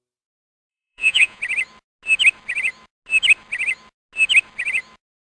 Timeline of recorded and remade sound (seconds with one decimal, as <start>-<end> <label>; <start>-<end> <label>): 0.0-0.7 recorded; 0.7-1.4 remade; 1.4-5.2 recorded